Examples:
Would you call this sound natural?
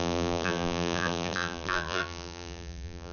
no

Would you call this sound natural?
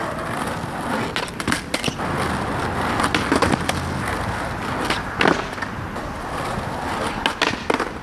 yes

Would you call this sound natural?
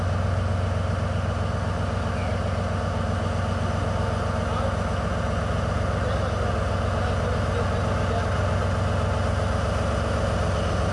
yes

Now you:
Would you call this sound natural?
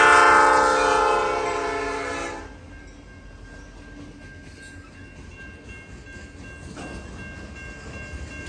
yes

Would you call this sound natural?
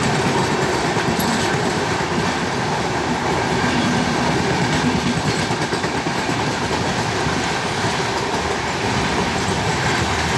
no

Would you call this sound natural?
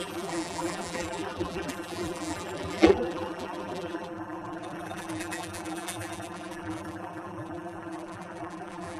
no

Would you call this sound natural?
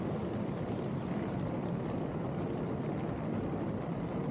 yes